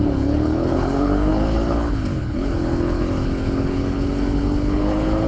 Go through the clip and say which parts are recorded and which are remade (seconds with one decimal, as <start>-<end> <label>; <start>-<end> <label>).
0.0-5.3 remade